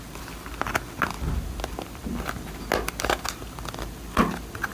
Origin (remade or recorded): recorded